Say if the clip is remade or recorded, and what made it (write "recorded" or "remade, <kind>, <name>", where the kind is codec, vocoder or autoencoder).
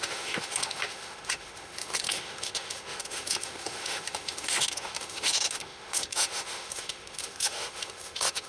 remade, autoencoder, DAC-VAE